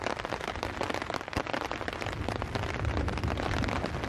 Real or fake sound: real